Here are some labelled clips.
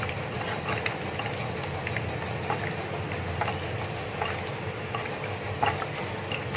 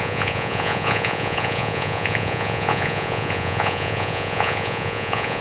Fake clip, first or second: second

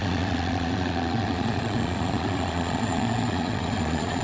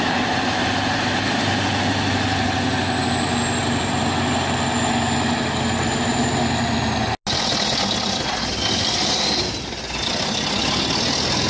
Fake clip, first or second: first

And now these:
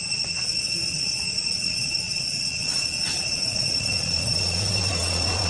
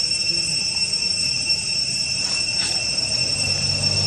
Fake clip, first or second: first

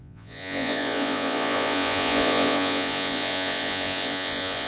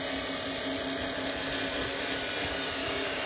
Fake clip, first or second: first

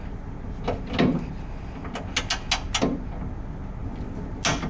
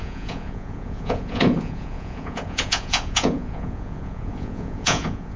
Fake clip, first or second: second